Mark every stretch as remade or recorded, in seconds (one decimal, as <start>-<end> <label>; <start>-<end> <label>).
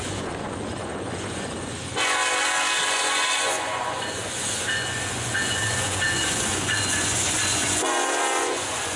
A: 0.0-2.2 remade; 2.2-2.8 recorded; 2.8-9.0 remade